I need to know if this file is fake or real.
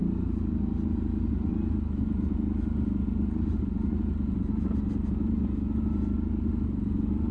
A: real